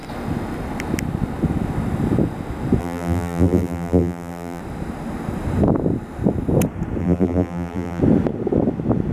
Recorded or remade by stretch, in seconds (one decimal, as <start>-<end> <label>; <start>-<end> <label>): 0.0-2.8 recorded; 2.8-4.6 remade; 4.6-7.0 recorded; 7.0-8.0 remade; 8.0-9.1 recorded